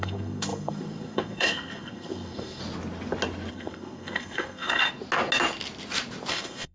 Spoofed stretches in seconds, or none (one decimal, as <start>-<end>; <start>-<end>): 0.0-2.6; 3.5-4.8; 6.3-6.7